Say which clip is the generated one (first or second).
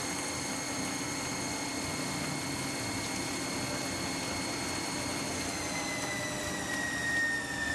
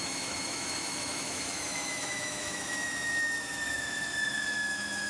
second